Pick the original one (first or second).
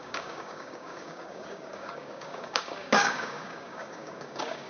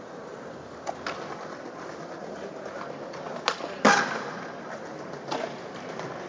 second